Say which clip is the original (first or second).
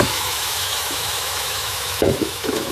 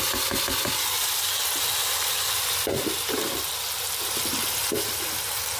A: second